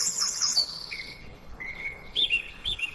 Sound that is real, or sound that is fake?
fake